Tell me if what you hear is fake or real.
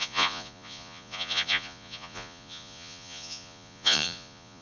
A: fake